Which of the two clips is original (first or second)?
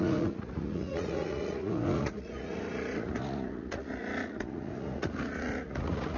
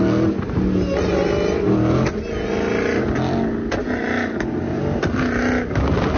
second